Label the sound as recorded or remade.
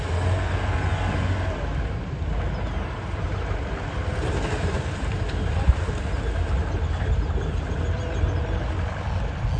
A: recorded